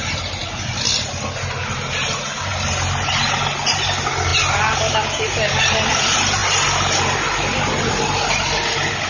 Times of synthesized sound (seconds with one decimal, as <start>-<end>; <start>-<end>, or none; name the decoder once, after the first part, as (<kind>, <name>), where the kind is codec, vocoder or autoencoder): none